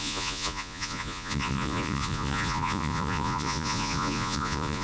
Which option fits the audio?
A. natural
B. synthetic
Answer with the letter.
B